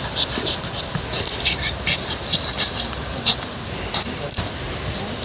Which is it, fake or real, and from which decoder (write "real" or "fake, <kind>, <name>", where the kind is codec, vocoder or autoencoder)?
real